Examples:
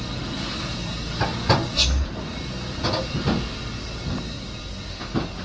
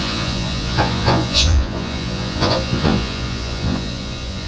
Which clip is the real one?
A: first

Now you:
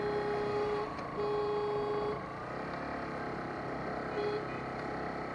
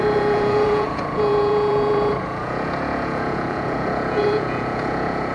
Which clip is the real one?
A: first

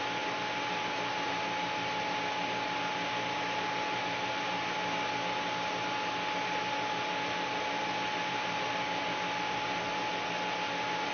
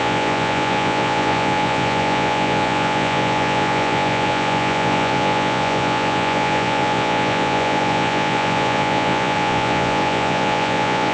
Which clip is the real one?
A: first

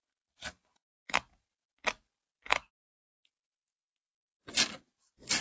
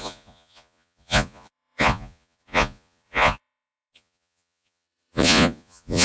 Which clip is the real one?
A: first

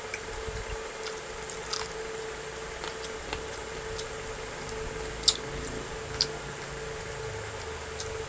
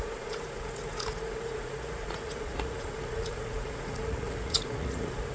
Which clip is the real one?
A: first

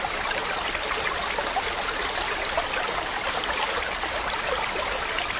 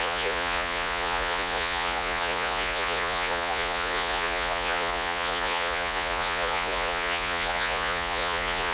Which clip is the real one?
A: first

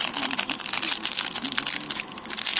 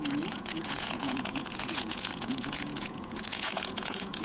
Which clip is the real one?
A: first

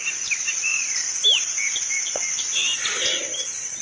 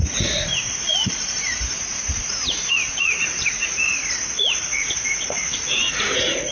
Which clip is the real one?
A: first